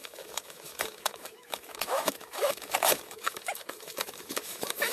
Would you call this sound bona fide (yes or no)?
no